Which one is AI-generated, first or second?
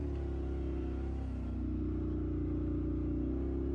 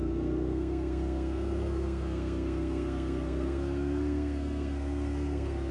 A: second